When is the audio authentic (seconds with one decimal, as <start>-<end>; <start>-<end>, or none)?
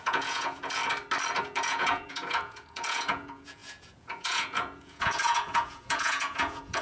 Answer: 0.8-1.4